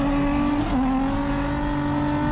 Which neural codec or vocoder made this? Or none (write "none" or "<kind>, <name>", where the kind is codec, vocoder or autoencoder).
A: none